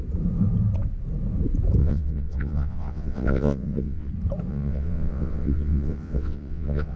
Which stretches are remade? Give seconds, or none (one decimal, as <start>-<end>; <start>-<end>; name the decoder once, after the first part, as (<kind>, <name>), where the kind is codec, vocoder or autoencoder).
1.8-4.1 (vocoder, WaveNeXt); 4.5-7.0